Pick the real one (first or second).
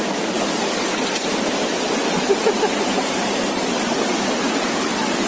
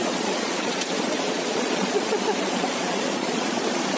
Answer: first